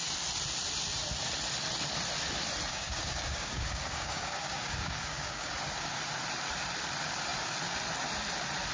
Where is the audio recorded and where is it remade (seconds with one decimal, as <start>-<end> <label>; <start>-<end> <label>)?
0.0-2.7 recorded; 2.7-5.5 remade; 5.5-8.7 recorded